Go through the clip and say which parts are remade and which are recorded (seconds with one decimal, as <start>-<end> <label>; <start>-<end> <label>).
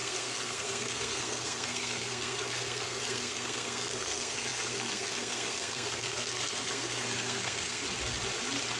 0.0-7.8 remade; 7.8-8.8 recorded